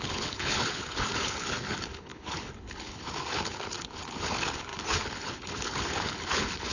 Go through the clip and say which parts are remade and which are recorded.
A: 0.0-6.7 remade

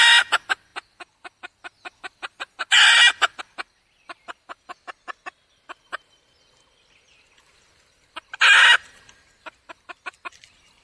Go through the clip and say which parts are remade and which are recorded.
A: 0.0-10.8 recorded

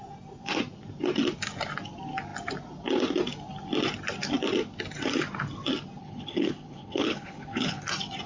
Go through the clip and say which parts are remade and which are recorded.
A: 0.0-6.0 recorded; 6.0-7.8 remade; 7.8-8.3 recorded

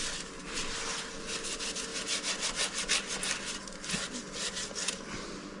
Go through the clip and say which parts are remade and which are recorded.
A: 0.0-5.6 recorded

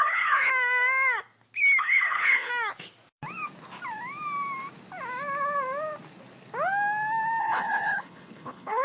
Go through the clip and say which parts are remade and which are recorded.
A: 0.0-0.5 remade; 0.5-1.8 recorded; 1.8-2.5 remade; 2.5-7.4 recorded; 7.4-8.8 remade

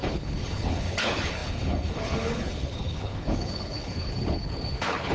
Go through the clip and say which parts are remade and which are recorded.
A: 0.0-5.1 remade

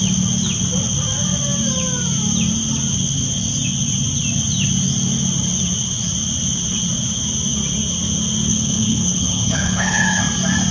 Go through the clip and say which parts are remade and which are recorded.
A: 0.0-8.5 recorded; 8.5-10.2 remade; 10.2-10.7 recorded

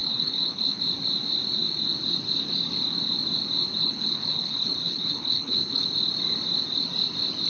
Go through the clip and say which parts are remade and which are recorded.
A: 0.0-0.8 remade; 0.8-3.8 recorded; 3.8-5.9 remade; 5.9-7.5 recorded